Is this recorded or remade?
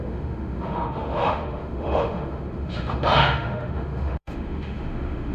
remade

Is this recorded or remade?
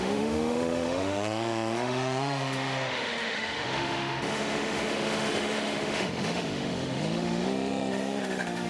remade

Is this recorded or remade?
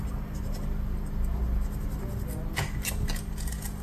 recorded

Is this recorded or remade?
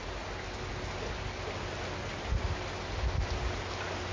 recorded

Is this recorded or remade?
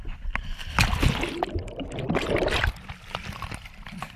recorded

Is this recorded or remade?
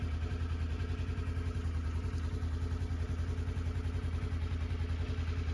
recorded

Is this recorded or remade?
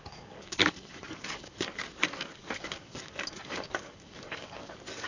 remade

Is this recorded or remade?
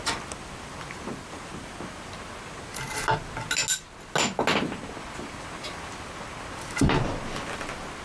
recorded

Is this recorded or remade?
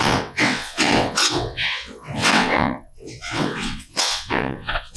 remade